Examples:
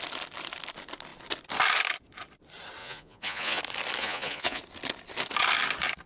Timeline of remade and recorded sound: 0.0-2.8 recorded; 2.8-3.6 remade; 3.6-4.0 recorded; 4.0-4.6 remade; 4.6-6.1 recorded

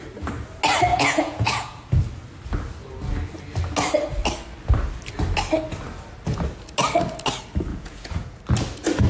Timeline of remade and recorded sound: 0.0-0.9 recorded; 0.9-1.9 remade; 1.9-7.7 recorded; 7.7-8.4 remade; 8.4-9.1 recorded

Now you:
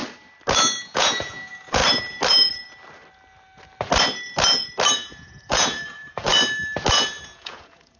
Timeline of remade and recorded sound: 0.0-0.8 recorded; 0.8-1.8 remade; 1.8-4.9 recorded; 4.9-6.3 remade; 6.3-6.9 recorded; 6.9-8.0 remade

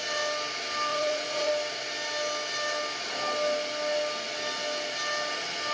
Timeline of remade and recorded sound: 0.0-0.9 recorded; 0.9-1.5 remade; 1.5-5.7 recorded